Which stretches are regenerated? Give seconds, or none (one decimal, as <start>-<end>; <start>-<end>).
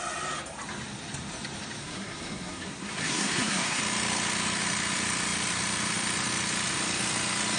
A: 1.8-3.8